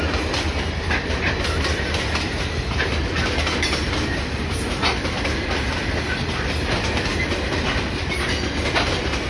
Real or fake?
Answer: real